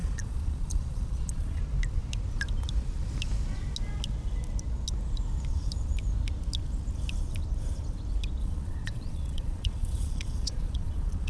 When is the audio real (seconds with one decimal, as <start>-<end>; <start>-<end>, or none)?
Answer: 1.6-8.4

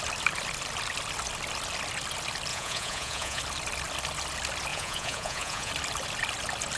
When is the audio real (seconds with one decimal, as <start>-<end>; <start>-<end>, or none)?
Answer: 0.0-2.5; 3.4-4.7; 5.7-6.8

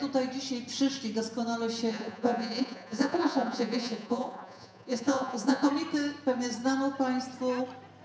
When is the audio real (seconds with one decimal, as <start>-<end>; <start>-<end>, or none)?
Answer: 0.0-1.9; 5.7-8.0

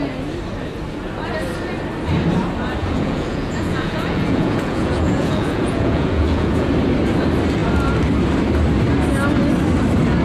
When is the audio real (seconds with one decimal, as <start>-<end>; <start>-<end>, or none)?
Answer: 0.0-2.8; 6.7-10.2

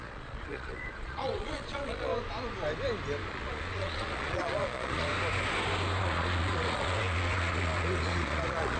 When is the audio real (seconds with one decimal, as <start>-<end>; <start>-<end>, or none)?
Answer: 2.1-3.3; 5.1-6.0

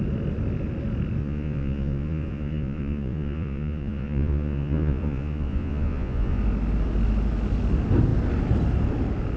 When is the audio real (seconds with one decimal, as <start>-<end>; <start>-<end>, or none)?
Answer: 0.0-1.2; 6.4-9.4

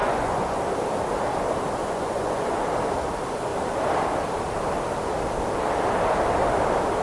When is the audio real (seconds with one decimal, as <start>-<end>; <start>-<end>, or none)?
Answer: 0.6-1.8; 2.6-7.0

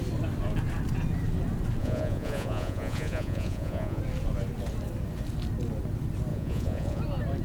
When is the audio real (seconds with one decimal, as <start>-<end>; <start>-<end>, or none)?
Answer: 0.0-1.8; 4.0-6.3; 7.0-7.4